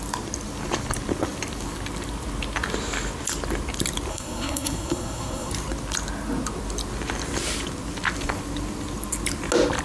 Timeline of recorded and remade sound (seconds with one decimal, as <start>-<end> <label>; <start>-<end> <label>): 0.0-4.1 recorded; 4.1-5.5 remade; 5.5-9.8 recorded